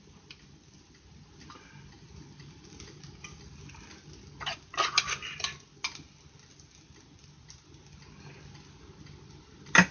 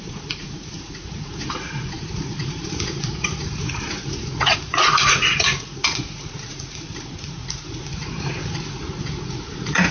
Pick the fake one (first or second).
second